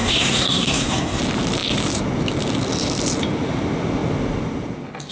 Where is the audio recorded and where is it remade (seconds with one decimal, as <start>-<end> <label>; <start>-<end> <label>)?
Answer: 0.0-1.2 remade; 1.2-5.1 recorded